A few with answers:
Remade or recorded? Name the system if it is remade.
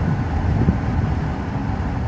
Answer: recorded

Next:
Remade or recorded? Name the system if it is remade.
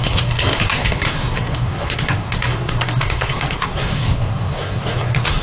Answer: remade, codec, SNAC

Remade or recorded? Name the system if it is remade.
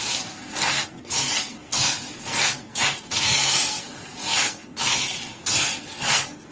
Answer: remade, codec, SNAC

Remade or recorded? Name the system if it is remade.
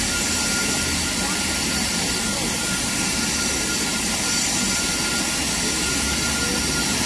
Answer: recorded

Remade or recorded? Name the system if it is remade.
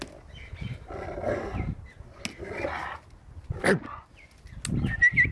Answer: recorded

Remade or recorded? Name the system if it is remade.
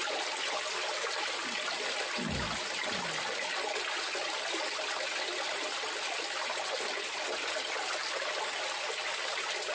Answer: recorded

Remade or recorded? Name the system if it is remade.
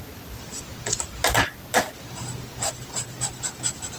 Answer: recorded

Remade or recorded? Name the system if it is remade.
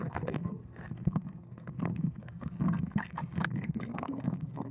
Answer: remade, codec, SNAC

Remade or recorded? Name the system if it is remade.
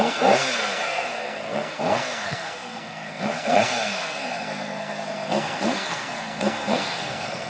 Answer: remade, codec, SNAC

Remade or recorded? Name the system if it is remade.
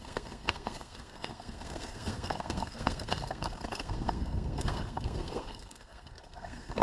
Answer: remade, codec, SNAC